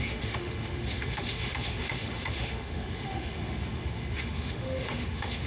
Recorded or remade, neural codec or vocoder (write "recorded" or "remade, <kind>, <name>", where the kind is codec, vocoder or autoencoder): remade, autoencoder, DAC-VAE